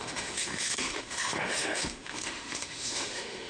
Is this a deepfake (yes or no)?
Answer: yes